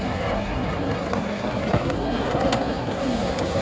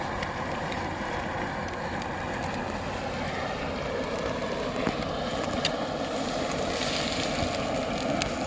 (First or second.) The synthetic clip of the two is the first